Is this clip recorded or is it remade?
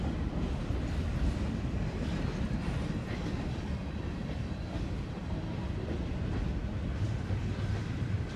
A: remade